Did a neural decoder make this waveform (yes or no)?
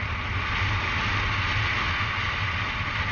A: no